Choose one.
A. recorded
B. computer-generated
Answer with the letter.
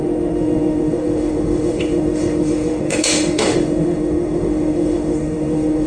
B